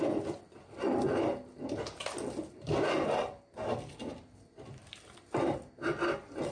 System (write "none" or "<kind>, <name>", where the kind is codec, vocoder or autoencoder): none